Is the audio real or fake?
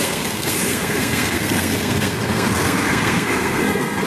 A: fake